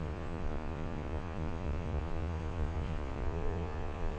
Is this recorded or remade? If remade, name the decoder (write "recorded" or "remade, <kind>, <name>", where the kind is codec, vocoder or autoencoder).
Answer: remade, vocoder, Vocos